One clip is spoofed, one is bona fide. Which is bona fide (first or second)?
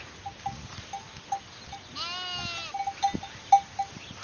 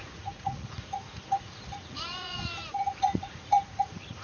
first